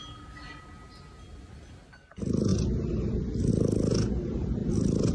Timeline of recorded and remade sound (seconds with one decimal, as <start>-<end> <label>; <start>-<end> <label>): 0.0-5.1 recorded